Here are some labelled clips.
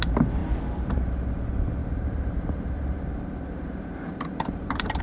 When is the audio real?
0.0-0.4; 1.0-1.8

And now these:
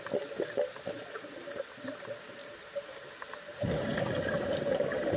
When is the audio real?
0.0-2.4; 3.3-5.2

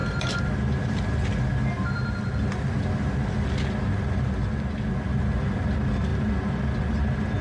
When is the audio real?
0.0-7.4

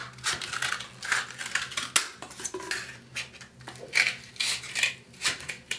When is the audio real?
0.0-5.8

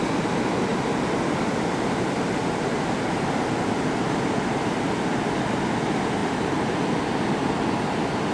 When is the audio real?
0.0-6.2; 7.5-8.3

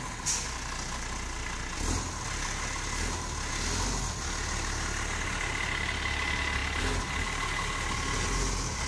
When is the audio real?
0.0-8.9